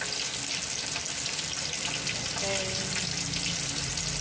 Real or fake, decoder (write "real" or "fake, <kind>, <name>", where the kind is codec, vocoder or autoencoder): real